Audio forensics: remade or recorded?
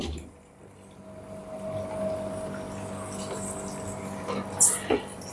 recorded